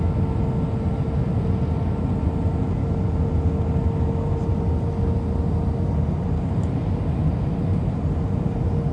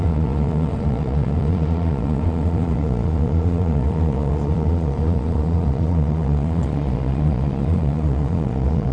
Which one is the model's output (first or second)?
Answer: second